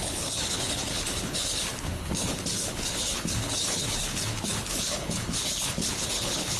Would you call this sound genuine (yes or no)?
no